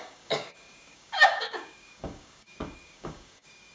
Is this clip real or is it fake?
fake